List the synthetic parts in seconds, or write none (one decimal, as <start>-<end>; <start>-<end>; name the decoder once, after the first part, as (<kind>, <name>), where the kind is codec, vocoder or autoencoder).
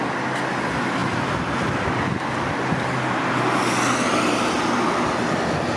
none